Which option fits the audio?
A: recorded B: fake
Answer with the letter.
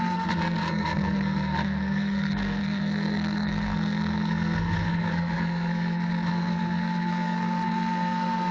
B